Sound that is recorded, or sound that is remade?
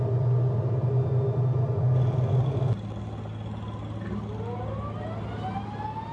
recorded